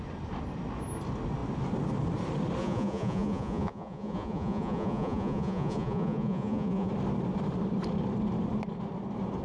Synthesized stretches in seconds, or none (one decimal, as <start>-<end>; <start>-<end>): 2.6-6.9